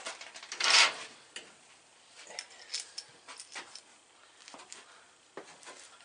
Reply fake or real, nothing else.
real